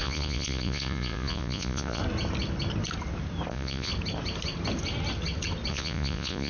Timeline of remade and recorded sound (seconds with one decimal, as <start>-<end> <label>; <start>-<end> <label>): 0.0-2.0 remade; 2.0-3.5 recorded; 3.5-3.9 remade; 3.9-5.7 recorded; 5.7-6.5 remade